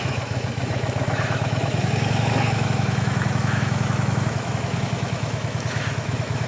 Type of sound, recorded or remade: remade